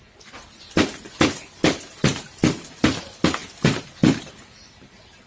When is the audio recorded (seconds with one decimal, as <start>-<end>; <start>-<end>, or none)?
0.0-5.3

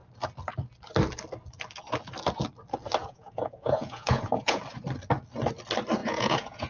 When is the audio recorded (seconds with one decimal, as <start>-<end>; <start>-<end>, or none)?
0.0-3.0; 4.6-6.0

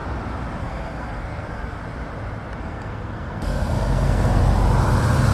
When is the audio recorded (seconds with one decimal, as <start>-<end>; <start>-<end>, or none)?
0.0-0.6; 1.8-2.6; 4.4-5.3